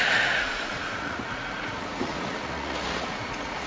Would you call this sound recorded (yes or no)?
no